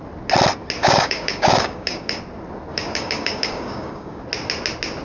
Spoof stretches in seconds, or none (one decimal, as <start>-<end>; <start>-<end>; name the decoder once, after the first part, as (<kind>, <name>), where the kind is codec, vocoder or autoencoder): 0.8-2.2 (codec, DAC); 2.7-4.2